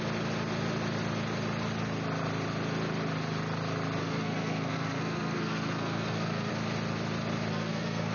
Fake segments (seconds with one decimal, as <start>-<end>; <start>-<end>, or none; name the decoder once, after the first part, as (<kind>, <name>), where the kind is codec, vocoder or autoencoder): 4.0-6.5 (codec, SNAC); 7.5-8.1